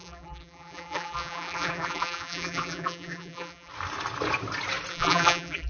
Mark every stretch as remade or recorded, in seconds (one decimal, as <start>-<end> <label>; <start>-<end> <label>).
0.0-3.7 remade; 3.7-4.9 recorded; 4.9-5.7 remade